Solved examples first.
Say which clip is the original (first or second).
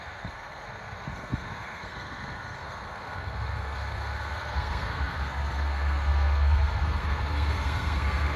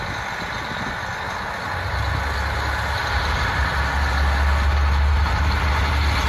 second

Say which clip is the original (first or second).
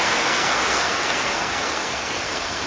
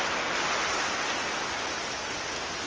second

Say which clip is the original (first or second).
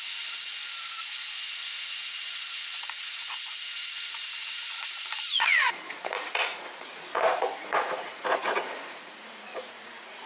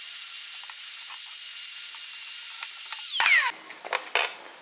second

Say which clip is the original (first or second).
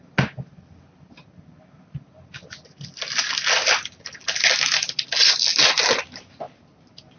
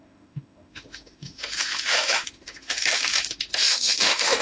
first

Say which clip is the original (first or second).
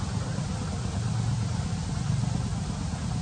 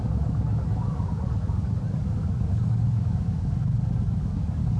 first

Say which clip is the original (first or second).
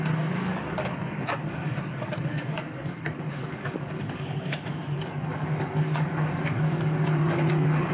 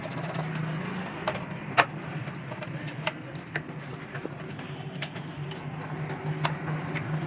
second